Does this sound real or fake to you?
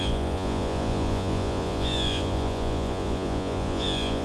fake